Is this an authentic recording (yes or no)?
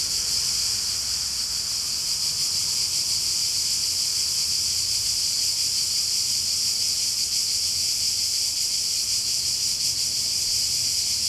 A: yes